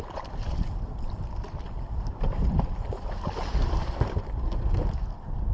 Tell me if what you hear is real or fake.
real